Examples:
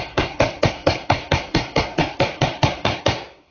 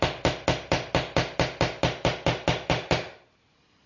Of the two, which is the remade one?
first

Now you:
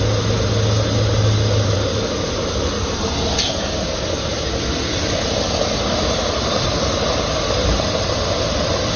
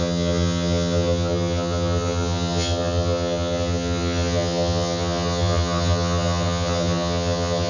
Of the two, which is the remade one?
second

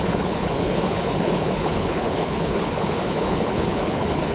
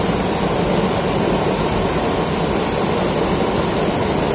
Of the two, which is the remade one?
first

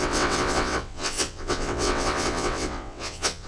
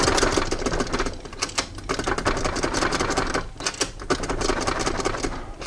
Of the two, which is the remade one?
first